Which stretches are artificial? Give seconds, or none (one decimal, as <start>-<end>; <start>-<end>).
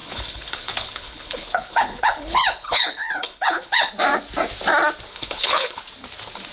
0.0-3.9; 5.1-5.8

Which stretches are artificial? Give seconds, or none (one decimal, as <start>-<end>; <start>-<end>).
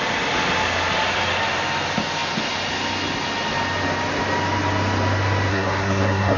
5.5-6.4